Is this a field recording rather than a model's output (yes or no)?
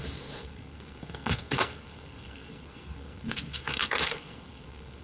no